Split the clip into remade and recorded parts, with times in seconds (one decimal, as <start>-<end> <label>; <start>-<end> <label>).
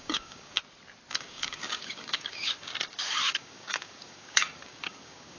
0.0-0.6 remade; 0.6-1.1 recorded; 1.1-2.7 remade; 2.7-3.3 recorded; 3.3-5.4 remade